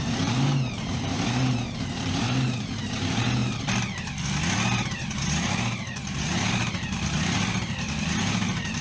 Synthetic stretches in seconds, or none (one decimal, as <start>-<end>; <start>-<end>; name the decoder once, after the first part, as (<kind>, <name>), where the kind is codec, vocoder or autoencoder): 0.0-3.4 (vocoder, BigVGAN v2); 4.9-8.8